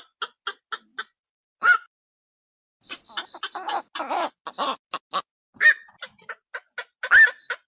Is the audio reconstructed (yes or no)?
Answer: no